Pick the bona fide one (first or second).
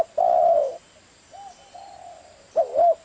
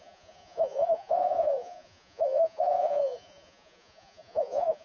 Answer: first